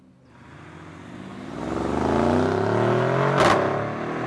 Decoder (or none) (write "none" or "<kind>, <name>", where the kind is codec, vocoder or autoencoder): none